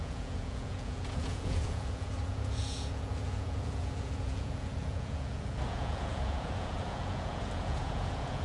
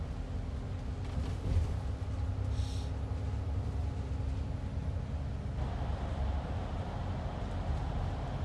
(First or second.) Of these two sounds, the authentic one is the second